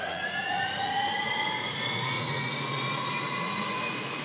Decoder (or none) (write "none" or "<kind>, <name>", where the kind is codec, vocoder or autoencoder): vocoder, Vocos